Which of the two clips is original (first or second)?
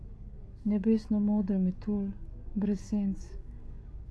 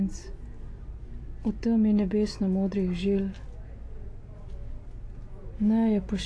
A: second